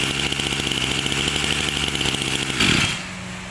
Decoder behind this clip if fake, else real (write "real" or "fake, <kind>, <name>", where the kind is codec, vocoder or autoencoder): real